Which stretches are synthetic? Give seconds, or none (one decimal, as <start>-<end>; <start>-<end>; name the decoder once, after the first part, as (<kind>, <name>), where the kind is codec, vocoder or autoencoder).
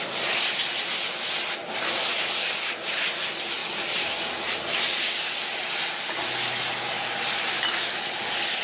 none